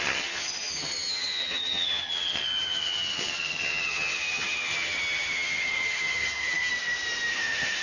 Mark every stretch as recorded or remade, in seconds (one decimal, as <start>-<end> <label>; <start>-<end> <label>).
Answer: 0.0-6.7 remade; 6.7-7.3 recorded; 7.3-7.8 remade